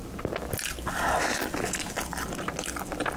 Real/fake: real